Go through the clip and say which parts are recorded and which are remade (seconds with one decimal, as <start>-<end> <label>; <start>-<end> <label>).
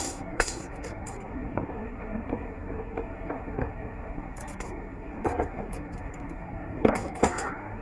0.0-7.8 remade